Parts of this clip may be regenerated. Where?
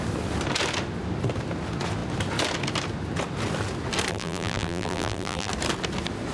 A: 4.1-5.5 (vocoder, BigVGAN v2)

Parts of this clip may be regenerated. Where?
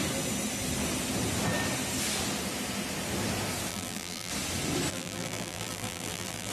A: 3.7-4.3 (vocoder, BigVGAN v2); 4.9-6.5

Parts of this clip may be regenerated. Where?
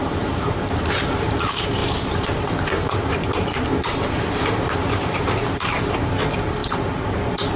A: 0.0-7.6 (vocoder, BigVGAN v2)